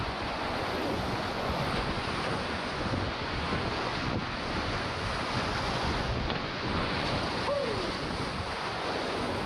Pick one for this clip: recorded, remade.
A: remade